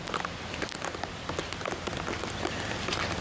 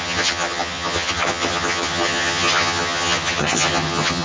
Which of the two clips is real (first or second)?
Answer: first